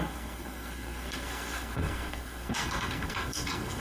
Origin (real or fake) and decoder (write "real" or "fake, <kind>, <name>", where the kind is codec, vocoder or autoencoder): fake, codec, SNAC